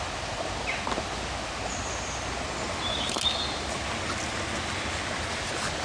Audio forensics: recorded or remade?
recorded